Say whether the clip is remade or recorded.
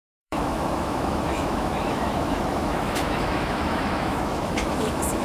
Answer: remade